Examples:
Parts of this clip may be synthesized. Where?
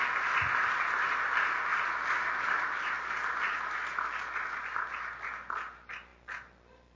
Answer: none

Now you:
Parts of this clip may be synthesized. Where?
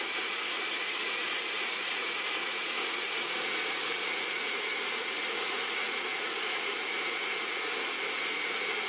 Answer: 0.0-8.9 (vocoder, Vocos)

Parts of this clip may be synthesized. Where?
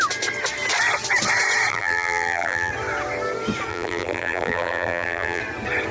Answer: 1.7-2.7 (vocoder, BigVGAN v2); 3.7-5.4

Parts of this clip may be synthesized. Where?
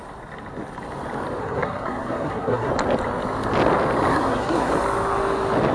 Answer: 1.4-2.7 (codec, SNAC); 4.1-4.7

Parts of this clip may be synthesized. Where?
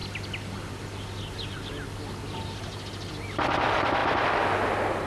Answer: none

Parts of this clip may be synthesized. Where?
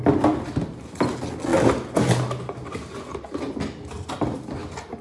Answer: none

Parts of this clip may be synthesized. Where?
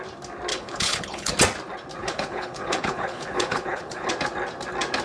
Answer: 0.5-1.3 (codec, HILCodec); 2.0-4.1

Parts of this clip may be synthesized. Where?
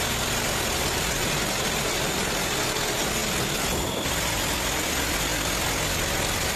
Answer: none